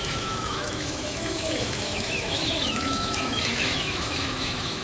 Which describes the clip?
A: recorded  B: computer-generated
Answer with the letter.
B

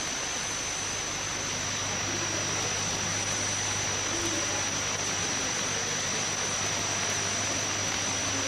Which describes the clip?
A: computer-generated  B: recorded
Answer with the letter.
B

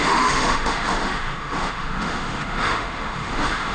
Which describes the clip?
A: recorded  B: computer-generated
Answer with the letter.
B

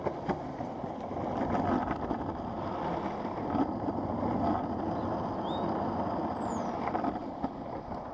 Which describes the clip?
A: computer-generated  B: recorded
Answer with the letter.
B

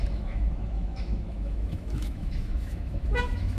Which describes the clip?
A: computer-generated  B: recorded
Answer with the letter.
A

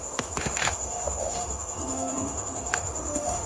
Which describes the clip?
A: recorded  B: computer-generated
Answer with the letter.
B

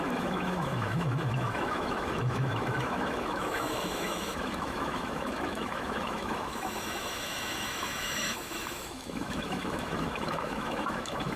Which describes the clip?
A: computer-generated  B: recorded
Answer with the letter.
A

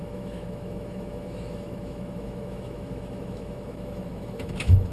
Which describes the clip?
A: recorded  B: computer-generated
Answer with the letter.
B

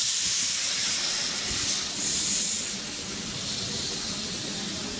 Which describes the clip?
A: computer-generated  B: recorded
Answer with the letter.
B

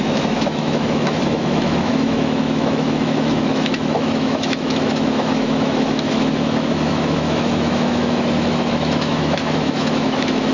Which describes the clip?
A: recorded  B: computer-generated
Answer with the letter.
B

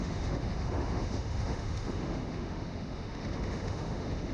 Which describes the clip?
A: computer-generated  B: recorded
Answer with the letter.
A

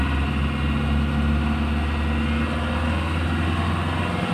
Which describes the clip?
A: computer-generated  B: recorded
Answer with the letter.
B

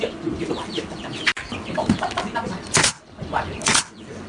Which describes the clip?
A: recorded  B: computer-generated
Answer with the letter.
A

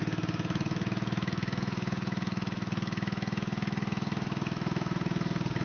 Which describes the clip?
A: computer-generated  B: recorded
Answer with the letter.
A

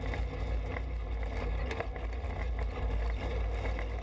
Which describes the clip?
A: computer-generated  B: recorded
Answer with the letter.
B